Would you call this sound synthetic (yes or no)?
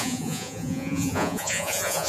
yes